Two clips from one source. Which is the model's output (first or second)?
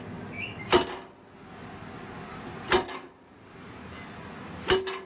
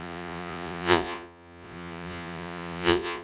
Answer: second